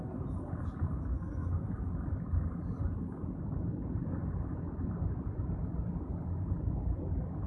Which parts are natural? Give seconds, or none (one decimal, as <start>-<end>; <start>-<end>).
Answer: 0.0-1.1; 1.7-7.5